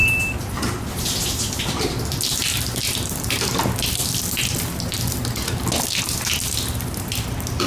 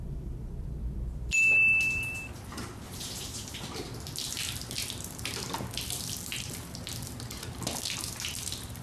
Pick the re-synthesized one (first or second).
second